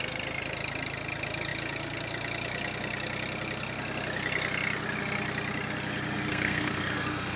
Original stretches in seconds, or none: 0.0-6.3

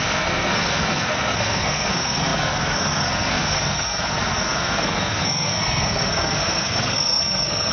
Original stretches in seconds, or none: none

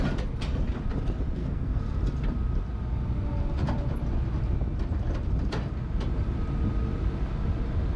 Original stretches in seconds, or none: 0.0-1.4; 2.0-8.0

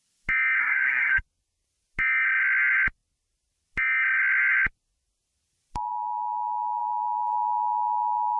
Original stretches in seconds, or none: 0.0-0.6; 1.2-8.4

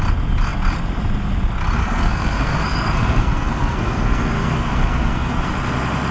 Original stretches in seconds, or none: 0.0-1.8; 5.5-6.1